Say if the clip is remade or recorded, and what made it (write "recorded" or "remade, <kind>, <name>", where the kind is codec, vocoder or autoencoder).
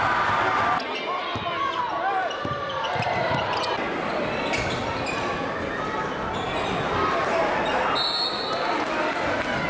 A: recorded